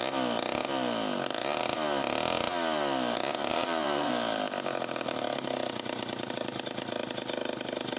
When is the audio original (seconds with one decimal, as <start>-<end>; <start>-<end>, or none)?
0.0-3.5; 4.1-8.0